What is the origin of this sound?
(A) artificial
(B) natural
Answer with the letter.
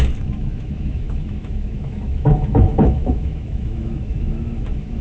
A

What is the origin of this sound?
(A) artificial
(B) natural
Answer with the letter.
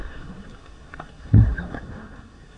A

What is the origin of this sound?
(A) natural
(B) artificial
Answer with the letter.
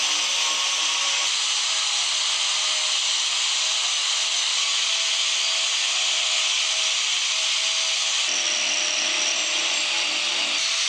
A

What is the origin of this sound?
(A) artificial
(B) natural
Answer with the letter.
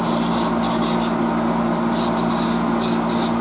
B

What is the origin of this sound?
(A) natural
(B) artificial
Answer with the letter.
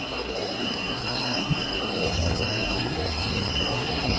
B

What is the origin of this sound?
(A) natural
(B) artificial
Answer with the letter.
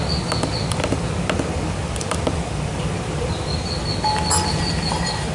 A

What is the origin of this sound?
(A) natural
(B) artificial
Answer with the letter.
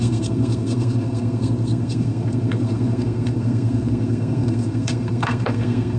B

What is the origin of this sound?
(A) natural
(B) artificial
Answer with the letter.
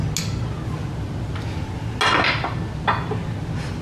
A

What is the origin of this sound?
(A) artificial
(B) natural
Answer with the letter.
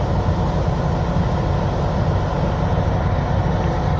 B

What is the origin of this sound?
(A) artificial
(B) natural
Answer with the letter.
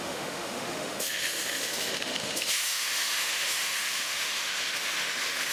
A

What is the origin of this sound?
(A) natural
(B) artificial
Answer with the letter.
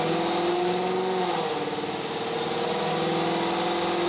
A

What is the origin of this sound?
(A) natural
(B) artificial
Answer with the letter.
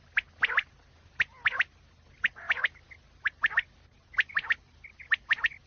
A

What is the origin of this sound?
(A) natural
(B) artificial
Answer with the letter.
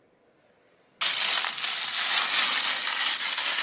A